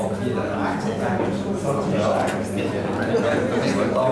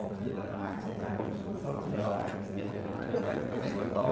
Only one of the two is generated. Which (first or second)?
second